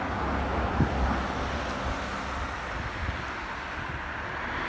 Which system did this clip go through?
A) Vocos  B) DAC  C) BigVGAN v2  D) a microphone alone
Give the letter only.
D